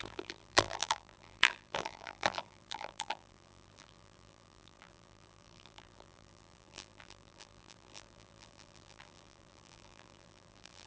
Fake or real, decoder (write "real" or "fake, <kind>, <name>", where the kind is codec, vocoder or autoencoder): fake, vocoder, BigVGAN v2